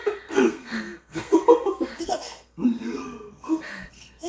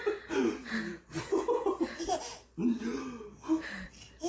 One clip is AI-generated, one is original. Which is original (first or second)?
second